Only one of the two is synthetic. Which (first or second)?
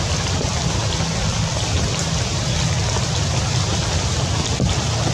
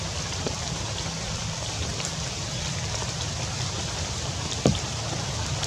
second